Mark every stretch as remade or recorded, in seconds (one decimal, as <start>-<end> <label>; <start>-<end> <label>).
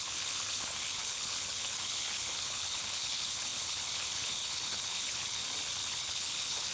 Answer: 0.0-5.4 remade; 5.4-5.9 recorded; 5.9-6.7 remade